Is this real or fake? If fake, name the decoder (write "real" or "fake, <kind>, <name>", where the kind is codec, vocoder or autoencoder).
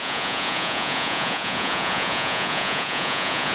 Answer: fake, vocoder, Vocos